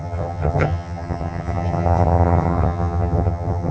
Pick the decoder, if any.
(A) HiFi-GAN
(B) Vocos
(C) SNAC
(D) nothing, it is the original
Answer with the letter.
A